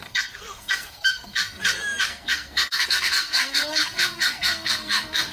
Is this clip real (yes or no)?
no